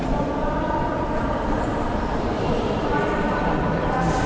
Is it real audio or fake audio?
fake